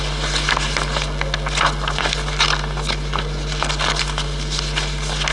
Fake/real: real